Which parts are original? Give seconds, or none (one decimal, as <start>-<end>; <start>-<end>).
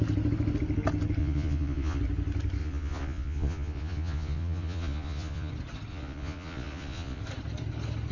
0.0-1.2; 2.0-2.6; 5.5-5.9; 7.2-8.1